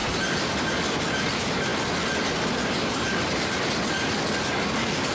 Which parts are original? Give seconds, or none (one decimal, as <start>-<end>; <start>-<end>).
0.5-5.1